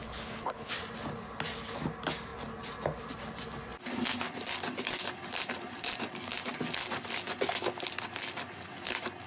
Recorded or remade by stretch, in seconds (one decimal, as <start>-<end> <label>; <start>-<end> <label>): 0.0-0.7 remade; 0.7-9.3 recorded